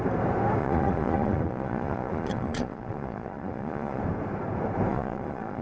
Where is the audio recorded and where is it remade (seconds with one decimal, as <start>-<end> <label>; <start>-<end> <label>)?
0.0-0.6 recorded; 0.6-4.0 remade; 4.0-4.9 recorded; 4.9-5.6 remade